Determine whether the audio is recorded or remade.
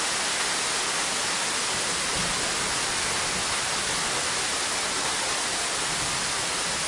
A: recorded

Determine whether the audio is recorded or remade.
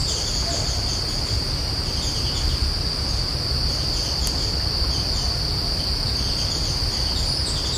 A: recorded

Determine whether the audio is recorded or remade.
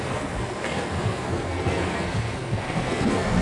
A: remade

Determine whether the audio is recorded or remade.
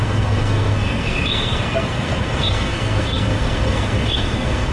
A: remade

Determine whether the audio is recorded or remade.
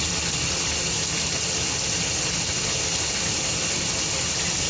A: recorded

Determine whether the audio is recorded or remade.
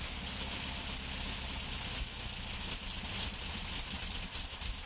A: remade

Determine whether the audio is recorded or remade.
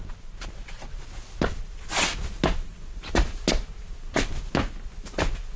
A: recorded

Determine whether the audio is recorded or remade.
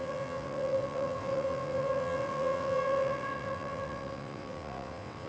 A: remade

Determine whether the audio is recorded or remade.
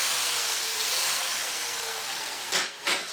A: remade